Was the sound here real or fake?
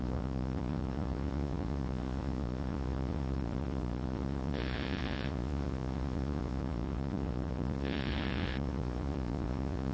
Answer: fake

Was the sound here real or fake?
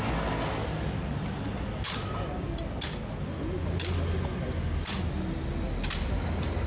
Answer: real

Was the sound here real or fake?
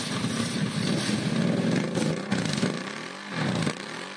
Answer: real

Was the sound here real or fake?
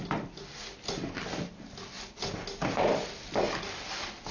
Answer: real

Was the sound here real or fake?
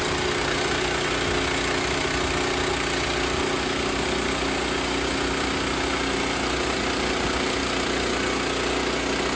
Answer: real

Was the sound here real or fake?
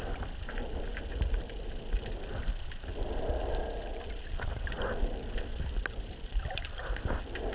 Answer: real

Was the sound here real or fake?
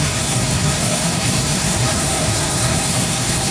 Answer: fake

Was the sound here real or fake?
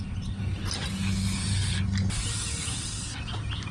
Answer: real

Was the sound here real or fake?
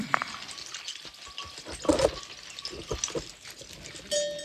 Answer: real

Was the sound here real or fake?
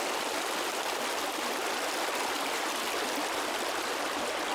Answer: real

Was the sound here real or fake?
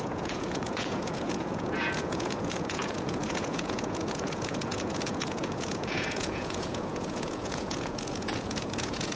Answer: fake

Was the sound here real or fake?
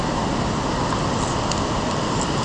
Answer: real